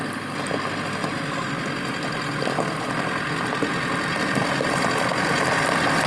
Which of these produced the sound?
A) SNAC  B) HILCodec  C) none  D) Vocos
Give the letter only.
C